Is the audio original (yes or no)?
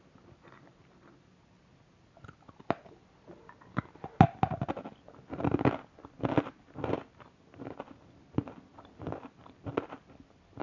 yes